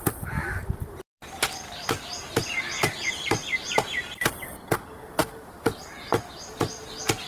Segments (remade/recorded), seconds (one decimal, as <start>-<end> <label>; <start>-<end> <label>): 0.0-0.4 recorded; 0.4-3.8 remade; 3.8-5.2 recorded; 5.2-7.3 remade